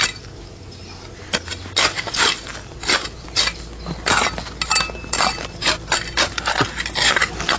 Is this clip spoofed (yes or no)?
no